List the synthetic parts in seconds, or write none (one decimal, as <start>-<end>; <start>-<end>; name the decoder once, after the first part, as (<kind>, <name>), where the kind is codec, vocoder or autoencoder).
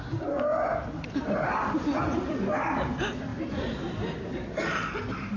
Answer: none